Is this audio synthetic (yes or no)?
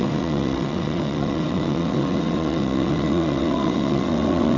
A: yes